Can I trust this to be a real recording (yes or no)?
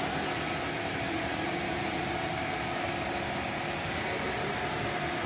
yes